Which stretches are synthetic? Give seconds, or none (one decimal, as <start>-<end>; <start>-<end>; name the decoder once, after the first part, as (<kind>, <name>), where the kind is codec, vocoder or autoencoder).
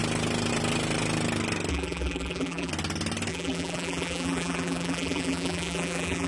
1.7-2.7 (vocoder, BigVGAN v2); 3.3-6.3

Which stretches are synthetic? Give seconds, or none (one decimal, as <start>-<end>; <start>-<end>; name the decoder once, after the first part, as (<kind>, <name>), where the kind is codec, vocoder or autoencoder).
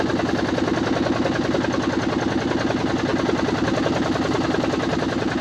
none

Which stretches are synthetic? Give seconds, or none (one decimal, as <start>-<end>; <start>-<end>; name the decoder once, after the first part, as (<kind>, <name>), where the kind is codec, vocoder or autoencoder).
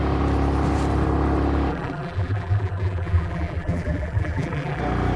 1.7-4.8 (vocoder, BigVGAN v2)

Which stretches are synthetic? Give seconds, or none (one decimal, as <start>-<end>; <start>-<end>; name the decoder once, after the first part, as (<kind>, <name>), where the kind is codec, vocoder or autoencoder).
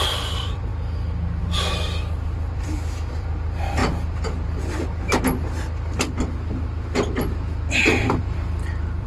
0.0-0.7 (vocoder, BigVGAN v2); 1.4-3.8; 8.2-9.1